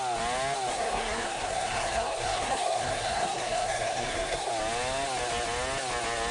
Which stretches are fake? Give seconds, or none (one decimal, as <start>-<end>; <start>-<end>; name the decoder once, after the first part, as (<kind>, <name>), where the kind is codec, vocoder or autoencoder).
0.7-4.5 (codec, SNAC)